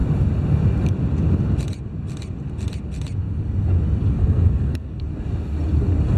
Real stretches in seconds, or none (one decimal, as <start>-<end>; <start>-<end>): 0.0-4.2; 5.0-6.2